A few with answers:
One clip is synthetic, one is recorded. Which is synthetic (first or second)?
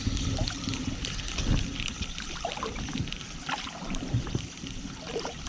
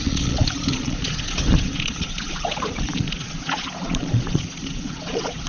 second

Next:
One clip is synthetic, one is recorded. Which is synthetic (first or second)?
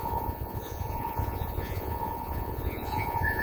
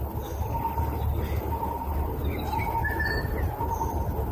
first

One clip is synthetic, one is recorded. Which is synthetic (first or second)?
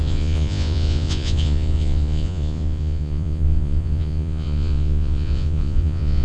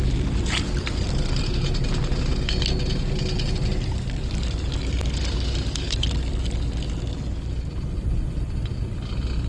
first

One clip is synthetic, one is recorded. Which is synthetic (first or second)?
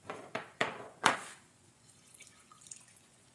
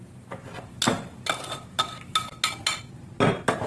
first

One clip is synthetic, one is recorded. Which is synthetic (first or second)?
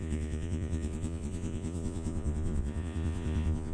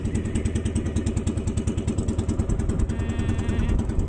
first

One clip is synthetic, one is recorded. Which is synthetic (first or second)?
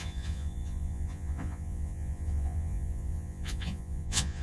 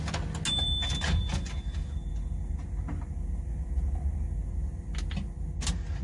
first